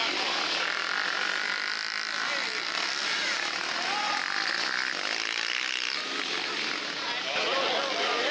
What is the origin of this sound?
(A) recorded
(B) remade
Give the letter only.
A